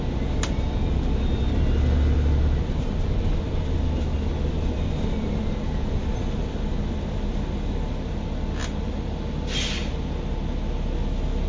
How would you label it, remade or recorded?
recorded